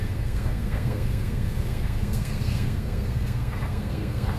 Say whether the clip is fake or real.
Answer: fake